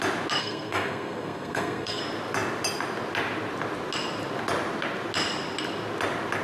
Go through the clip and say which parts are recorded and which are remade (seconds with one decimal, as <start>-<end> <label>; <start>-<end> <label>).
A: 0.0-0.4 recorded; 0.4-2.0 remade; 2.0-6.4 recorded